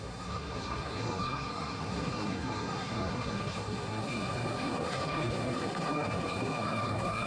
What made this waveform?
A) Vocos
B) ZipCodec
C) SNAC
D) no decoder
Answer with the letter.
C